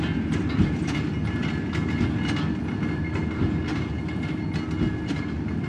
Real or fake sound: real